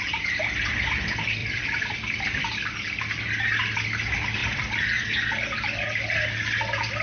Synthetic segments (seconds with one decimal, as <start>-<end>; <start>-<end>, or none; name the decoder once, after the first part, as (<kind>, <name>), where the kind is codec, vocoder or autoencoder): 1.4-2.4 (vocoder, BigVGAN v2); 4.4-5.0

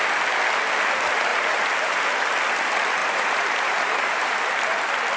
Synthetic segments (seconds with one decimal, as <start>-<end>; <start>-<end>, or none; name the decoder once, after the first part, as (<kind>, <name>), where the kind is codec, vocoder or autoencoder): 1.3-2.0 (vocoder, BigVGAN v2); 3.0-4.5

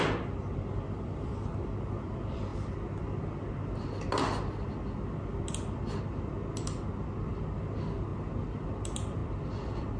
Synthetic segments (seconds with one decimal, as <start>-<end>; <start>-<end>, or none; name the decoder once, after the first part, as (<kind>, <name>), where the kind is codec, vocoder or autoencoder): 0.0-2.5 (vocoder, BigVGAN v2); 7.3-8.1; 8.7-10.0

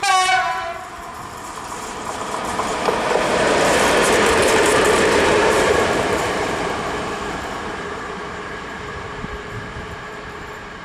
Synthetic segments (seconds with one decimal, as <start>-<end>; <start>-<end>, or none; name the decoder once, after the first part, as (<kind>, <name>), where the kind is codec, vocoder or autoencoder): 0.0-10.8 (vocoder, BigVGAN v2)

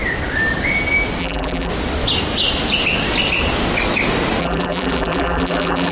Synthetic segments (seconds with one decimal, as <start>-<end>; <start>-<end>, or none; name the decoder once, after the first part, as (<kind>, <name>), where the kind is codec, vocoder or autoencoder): 1.2-1.7 (vocoder, BigVGAN v2); 4.4-5.9